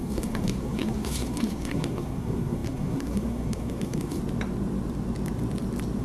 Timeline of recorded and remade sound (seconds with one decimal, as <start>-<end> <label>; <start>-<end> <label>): 0.0-4.2 remade; 4.2-6.0 recorded